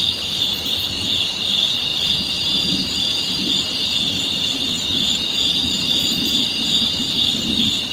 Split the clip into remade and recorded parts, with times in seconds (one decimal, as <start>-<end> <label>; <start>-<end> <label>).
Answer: 0.0-7.9 recorded